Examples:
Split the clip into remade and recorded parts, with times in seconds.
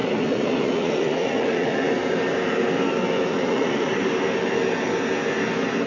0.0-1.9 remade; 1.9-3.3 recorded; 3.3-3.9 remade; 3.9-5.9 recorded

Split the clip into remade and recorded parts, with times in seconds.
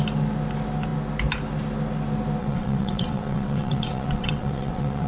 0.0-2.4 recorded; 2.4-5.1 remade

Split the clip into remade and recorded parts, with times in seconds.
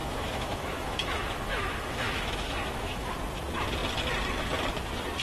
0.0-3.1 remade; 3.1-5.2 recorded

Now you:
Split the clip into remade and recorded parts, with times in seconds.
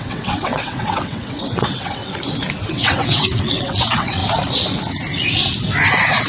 0.0-2.0 remade; 2.0-2.7 recorded; 2.7-4.2 remade; 4.2-6.3 recorded